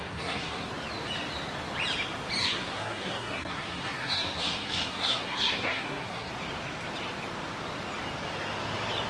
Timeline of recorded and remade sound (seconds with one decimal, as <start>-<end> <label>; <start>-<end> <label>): 0.0-0.7 remade; 0.7-2.4 recorded; 2.4-6.3 remade; 6.3-9.1 recorded